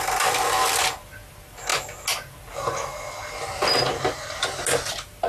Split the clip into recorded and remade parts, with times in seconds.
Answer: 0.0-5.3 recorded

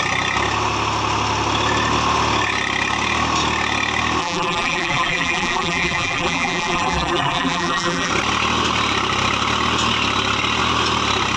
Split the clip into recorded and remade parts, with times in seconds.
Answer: 0.0-4.2 recorded; 4.2-8.1 remade; 8.1-11.4 recorded

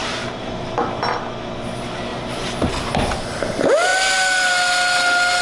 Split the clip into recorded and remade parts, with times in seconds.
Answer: 0.0-0.6 remade; 0.6-2.1 recorded; 2.1-2.7 remade; 2.7-5.4 recorded

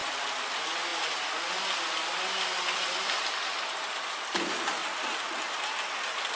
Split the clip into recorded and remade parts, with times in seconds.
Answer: 0.0-0.5 remade; 0.5-6.4 recorded

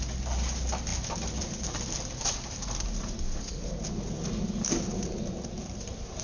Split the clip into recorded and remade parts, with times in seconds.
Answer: 0.0-0.9 recorded; 0.9-3.0 remade; 3.0-6.2 recorded